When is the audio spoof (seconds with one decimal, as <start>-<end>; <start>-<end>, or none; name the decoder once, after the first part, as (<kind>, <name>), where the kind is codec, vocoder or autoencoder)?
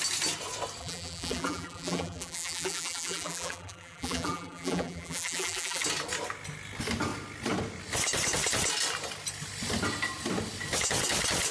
0.8-5.8 (vocoder, BigVGAN v2)